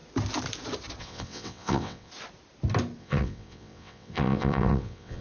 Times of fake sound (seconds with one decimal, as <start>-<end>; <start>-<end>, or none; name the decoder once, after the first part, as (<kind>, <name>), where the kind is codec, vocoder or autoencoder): 1.0-2.1 (vocoder, WaveNeXt); 3.0-5.2